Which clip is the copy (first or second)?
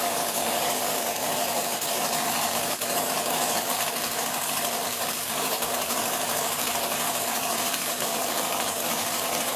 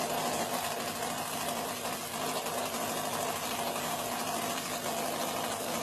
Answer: first